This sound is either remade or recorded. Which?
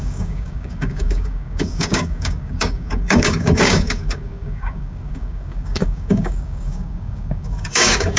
remade